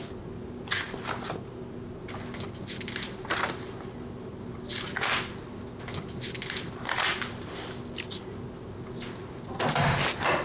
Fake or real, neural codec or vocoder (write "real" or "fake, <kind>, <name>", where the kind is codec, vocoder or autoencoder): real